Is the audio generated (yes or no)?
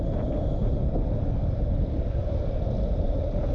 no